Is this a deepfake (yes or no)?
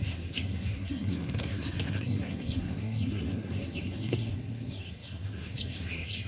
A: yes